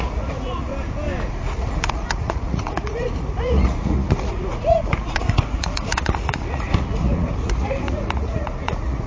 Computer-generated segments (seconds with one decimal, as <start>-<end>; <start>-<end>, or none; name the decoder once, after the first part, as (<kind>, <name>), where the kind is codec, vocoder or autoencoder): 0.0-0.7 (vocoder, Vocos); 1.3-9.1